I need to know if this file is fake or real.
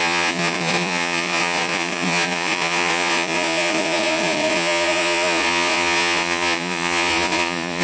fake